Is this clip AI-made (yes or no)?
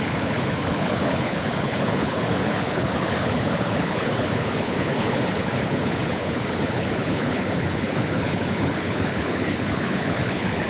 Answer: yes